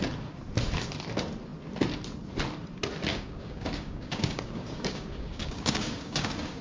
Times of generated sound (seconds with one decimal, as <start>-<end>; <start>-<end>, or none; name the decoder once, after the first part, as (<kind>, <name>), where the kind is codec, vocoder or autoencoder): 3.1-6.6 (codec, DAC)